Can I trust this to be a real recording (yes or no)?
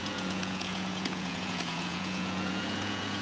no